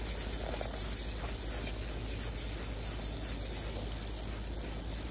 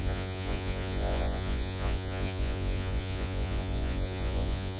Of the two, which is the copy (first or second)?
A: second